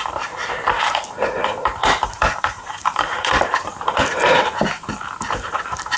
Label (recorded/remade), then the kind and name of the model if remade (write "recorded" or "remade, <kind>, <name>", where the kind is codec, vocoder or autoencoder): remade, vocoder, BigVGAN v2